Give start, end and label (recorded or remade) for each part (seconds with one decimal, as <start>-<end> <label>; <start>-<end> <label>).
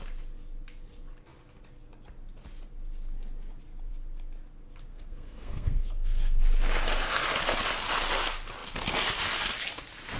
0.0-4.9 recorded; 4.9-6.4 remade; 6.4-10.2 recorded